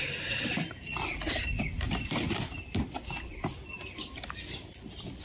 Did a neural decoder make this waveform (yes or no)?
no